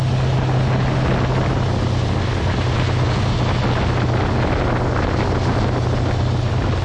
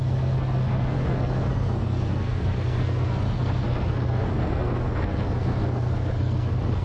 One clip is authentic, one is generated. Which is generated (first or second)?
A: second